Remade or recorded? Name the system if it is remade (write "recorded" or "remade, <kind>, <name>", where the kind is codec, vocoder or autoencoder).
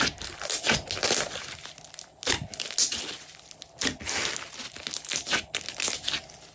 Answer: recorded